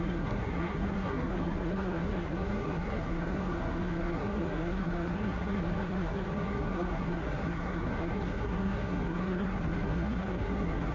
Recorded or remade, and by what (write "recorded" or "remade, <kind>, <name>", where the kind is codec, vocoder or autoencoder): remade, codec, SNAC